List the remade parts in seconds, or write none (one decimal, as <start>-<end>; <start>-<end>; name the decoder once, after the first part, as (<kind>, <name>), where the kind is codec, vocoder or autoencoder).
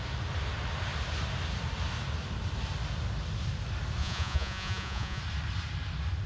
4.0-5.2 (vocoder, Vocos)